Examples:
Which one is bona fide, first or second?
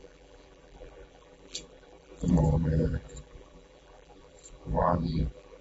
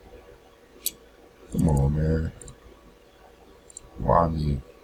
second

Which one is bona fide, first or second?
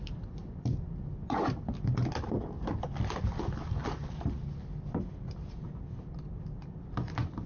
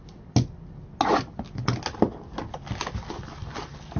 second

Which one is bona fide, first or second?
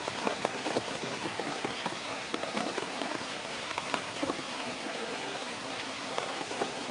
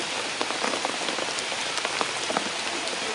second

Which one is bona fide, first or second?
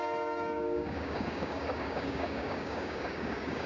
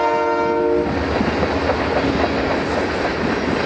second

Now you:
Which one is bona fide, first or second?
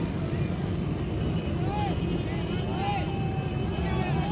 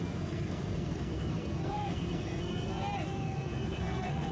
first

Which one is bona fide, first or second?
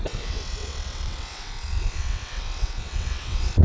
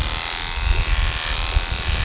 second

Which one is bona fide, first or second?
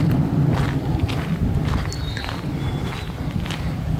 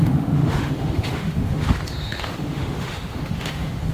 first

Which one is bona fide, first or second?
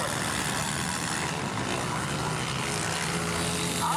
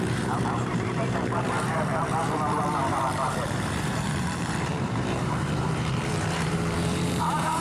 first